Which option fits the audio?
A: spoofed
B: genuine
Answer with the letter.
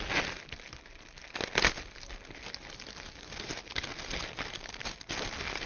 B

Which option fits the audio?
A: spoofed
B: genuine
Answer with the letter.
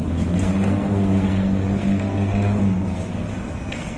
A